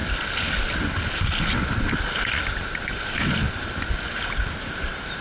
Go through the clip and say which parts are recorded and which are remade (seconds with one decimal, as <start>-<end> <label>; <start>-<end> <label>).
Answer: 0.0-2.9 recorded; 2.9-3.4 remade; 3.4-4.6 recorded; 4.6-5.2 remade